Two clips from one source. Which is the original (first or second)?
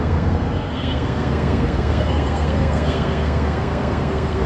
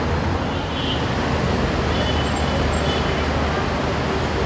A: second